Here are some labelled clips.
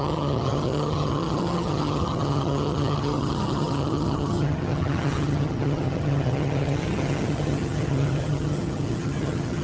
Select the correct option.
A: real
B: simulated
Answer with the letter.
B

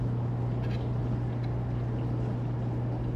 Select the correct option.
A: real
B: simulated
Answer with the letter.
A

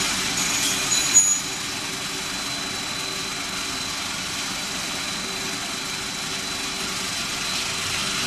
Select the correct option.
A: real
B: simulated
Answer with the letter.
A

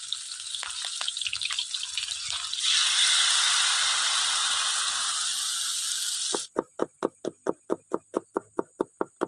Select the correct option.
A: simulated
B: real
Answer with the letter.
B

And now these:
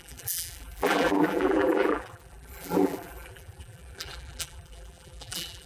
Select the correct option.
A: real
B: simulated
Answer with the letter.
B